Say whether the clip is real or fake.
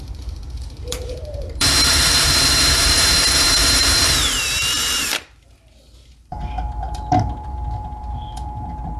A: fake